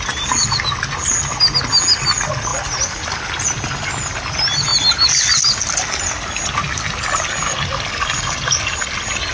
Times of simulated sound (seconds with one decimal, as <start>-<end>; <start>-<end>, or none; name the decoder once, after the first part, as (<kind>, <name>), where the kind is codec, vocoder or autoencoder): none